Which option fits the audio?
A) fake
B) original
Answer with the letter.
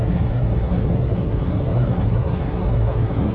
A